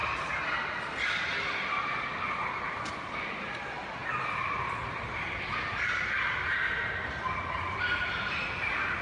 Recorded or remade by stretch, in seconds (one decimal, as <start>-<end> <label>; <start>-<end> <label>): 0.0-9.0 recorded

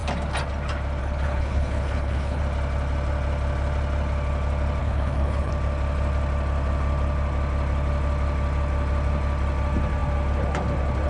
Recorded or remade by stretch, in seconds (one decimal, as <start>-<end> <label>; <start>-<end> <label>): 0.0-1.0 recorded; 1.0-2.4 remade; 2.4-4.8 recorded; 4.8-5.5 remade; 5.5-11.1 recorded

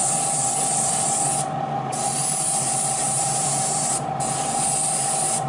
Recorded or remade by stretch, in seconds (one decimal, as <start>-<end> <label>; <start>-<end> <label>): 0.0-3.0 recorded; 3.0-4.2 remade; 4.2-5.5 recorded

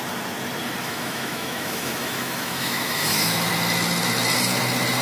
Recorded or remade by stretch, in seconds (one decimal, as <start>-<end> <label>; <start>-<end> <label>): 0.0-0.8 recorded; 0.8-3.5 remade; 3.5-5.0 recorded

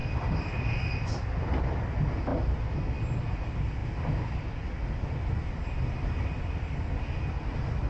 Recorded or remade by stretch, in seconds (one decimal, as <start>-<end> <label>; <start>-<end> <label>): 0.0-1.1 remade; 1.1-7.9 recorded

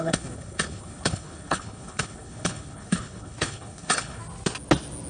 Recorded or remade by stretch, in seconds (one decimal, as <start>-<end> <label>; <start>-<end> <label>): 0.0-4.2 remade; 4.2-5.1 recorded